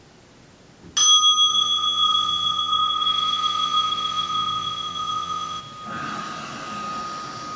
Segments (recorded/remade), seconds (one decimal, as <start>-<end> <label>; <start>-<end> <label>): 0.0-1.5 recorded; 1.5-5.6 remade; 5.6-7.6 recorded